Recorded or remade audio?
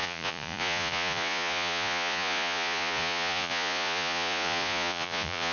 remade